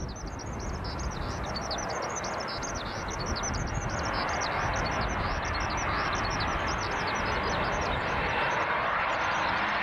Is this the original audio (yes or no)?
yes